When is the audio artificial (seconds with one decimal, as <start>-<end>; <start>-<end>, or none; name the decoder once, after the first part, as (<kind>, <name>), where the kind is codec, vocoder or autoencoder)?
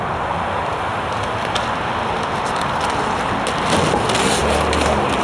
none